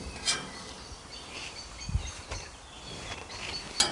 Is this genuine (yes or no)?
yes